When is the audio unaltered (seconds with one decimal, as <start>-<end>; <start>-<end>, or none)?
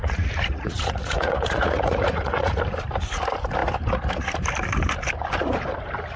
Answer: 2.6-6.2